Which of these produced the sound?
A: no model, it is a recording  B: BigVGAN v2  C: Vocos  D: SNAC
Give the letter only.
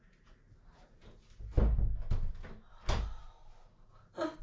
A